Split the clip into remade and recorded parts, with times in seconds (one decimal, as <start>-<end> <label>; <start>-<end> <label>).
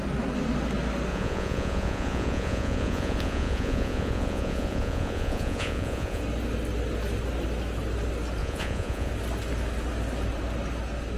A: 0.0-1.1 recorded; 1.1-6.2 remade; 6.2-8.4 recorded; 8.4-9.1 remade; 9.1-11.2 recorded